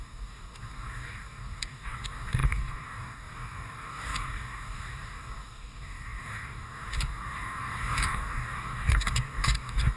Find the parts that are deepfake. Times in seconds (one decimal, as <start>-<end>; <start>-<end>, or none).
0.0-10.0